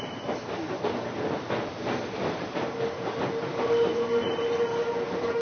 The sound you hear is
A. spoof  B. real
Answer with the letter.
B